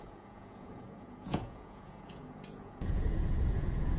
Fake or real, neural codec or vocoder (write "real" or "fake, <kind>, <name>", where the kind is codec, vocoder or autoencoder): fake, vocoder, Vocos